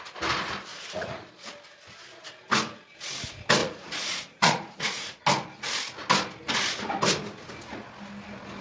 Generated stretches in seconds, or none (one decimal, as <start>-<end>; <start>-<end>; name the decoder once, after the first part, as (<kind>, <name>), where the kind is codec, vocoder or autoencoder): 0.7-1.3 (vocoder, Vocos); 3.6-5.2